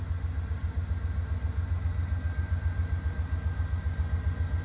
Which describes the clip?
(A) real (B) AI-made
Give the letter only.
A